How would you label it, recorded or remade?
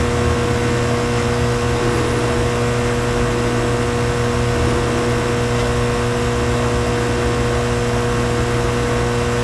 recorded